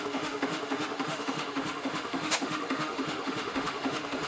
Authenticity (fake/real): fake